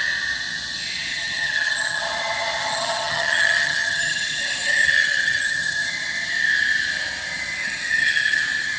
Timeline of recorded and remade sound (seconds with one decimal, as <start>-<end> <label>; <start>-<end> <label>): 0.0-1.1 recorded; 1.1-2.0 remade; 2.0-2.6 recorded; 2.6-5.9 remade; 5.9-7.6 recorded; 7.6-8.4 remade; 8.4-8.8 recorded